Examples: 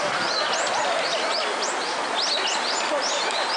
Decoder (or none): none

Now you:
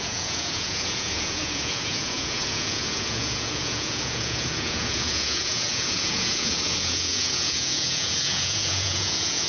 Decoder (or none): vocoder, Vocos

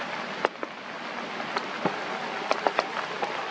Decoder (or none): none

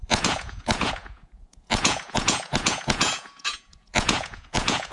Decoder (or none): vocoder, Vocos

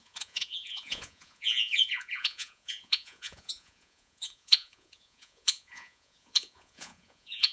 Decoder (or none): vocoder, Vocos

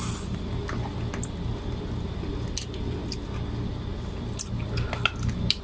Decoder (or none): none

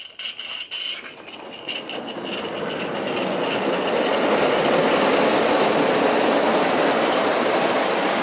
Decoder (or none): none